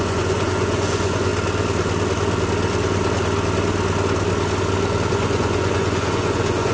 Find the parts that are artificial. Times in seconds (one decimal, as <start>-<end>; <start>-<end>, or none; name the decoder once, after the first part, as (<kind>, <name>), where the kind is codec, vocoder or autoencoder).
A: 0.0-1.3 (vocoder, Vocos); 5.1-6.7